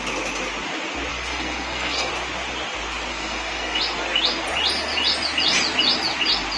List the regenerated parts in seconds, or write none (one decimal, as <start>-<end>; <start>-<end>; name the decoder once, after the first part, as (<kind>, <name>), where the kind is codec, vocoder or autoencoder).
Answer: 1.1-2.1 (codec, SNAC); 3.1-3.8